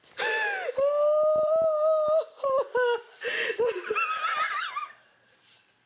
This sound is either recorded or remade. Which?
recorded